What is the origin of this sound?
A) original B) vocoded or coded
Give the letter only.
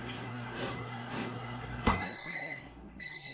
B